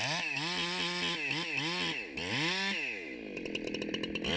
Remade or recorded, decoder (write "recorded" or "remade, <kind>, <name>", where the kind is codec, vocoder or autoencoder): recorded